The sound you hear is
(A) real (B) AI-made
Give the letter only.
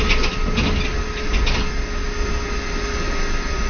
A